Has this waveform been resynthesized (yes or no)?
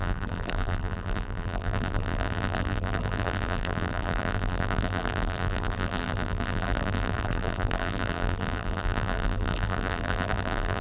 yes